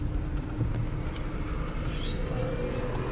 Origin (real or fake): real